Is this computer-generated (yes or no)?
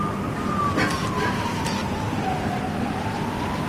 no